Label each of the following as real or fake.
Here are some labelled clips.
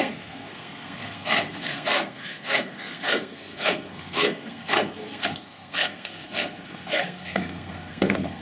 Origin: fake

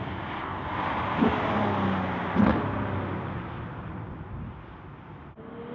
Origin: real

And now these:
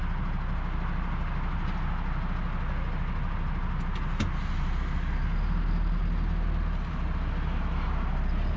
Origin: real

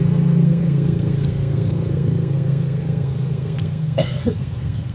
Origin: fake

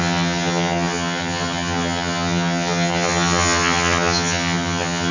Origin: fake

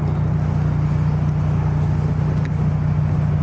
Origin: real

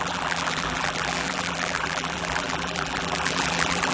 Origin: fake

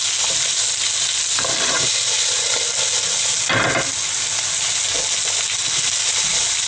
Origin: real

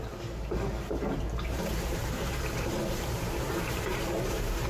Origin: fake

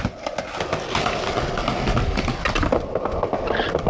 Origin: real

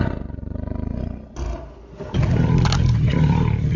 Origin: real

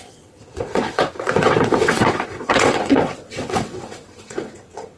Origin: fake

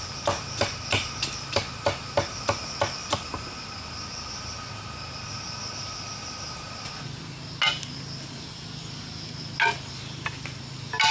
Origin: real